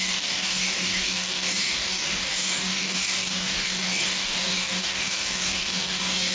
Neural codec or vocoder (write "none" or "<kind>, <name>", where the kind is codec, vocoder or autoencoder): codec, DAC